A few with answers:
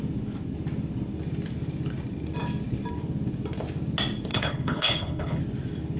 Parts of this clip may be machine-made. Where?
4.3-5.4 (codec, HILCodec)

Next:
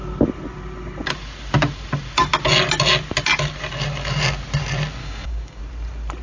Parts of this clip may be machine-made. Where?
5.0-5.6 (codec, DAC)

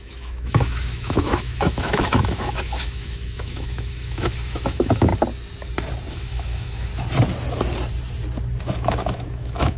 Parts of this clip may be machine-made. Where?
0.0-5.1 (autoencoder, DAC-VAE); 6.1-6.9; 8.6-9.8

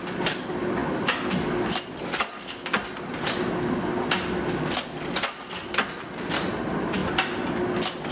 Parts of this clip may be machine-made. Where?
none